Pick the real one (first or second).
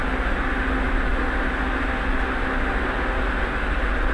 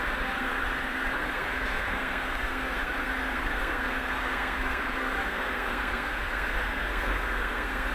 first